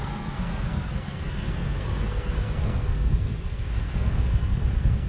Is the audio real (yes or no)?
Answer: no